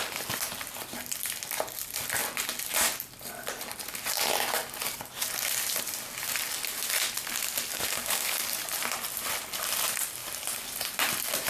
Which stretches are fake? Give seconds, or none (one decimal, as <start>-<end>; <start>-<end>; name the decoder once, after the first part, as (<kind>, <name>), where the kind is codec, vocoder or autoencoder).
7.7-8.4 (codec, DAC)